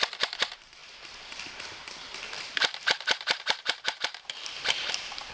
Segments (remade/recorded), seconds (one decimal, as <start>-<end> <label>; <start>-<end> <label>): 0.0-5.3 remade

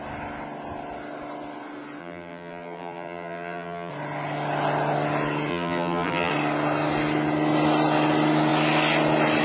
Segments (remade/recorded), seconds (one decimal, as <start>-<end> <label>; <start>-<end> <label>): 0.0-2.0 recorded; 2.0-3.9 remade; 3.9-5.5 recorded; 5.5-6.3 remade; 6.3-9.4 recorded